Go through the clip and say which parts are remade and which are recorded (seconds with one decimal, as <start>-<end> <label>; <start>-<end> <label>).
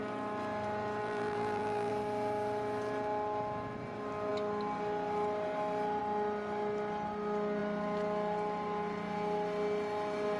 0.0-1.0 recorded; 1.0-1.9 remade; 1.9-10.4 recorded